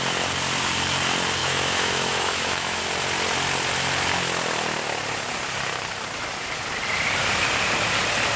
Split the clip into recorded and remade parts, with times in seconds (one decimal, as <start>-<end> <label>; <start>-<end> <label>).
0.0-1.4 recorded; 1.4-2.8 remade; 2.8-8.4 recorded